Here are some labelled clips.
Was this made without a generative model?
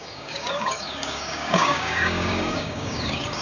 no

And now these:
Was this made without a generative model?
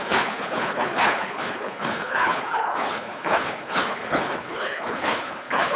no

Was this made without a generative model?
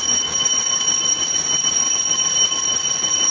yes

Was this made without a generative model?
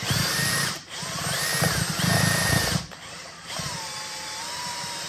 no